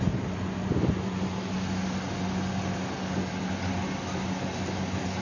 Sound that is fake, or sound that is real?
real